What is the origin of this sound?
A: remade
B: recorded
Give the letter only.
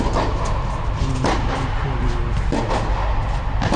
B